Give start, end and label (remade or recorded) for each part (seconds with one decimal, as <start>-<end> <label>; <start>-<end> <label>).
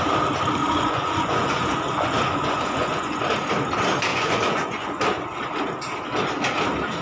0.0-0.6 recorded; 0.6-3.2 remade; 3.2-4.1 recorded; 4.1-5.0 remade; 5.0-7.0 recorded